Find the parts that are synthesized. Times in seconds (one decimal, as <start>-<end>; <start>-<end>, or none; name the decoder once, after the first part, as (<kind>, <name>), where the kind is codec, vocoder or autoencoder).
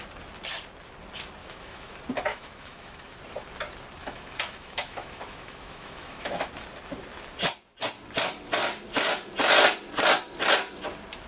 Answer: 1.4-1.9 (autoencoder, DAC-VAE); 2.3-3.2; 4.0-6.5